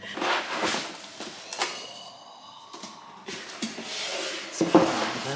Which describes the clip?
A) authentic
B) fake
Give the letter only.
A